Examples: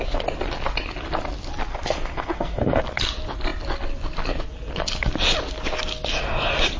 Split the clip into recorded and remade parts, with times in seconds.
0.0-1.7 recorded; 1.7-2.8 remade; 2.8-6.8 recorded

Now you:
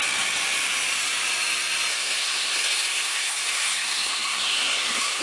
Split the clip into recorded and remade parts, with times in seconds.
0.0-1.9 recorded; 1.9-5.2 remade

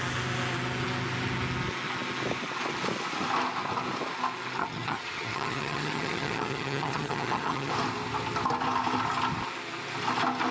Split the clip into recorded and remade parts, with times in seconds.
0.0-4.6 recorded; 4.6-7.7 remade; 7.7-10.5 recorded

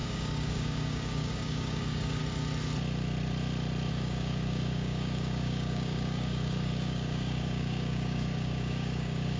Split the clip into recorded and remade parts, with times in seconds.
0.0-2.2 remade; 2.2-3.9 recorded; 3.9-9.4 remade

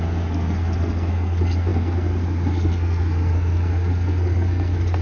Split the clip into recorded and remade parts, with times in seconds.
0.0-5.0 remade

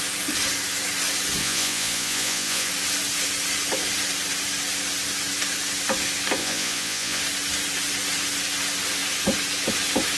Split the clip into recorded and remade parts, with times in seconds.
0.0-1.4 recorded; 1.4-2.7 remade; 2.7-6.4 recorded; 6.4-7.2 remade; 7.2-10.2 recorded

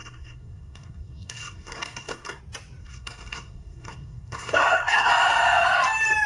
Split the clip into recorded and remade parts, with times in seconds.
0.0-2.4 remade; 2.4-2.8 recorded; 2.8-5.1 remade; 5.1-6.3 recorded

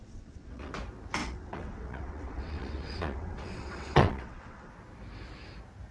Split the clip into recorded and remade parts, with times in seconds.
0.0-0.7 remade; 0.7-1.2 recorded; 1.2-4.7 remade; 4.7-5.9 recorded